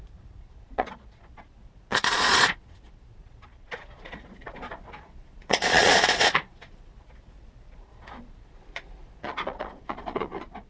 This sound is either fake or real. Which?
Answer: fake